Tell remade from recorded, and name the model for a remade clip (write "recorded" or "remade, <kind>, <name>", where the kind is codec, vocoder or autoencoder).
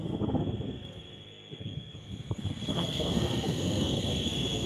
remade, codec, SNAC